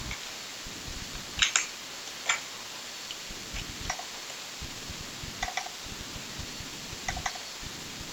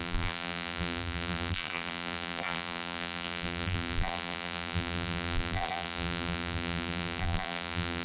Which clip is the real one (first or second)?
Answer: first